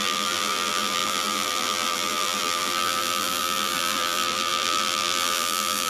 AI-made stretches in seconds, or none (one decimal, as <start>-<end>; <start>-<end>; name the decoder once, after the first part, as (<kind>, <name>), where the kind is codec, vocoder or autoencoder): 0.0-5.9 (vocoder, BigVGAN v2)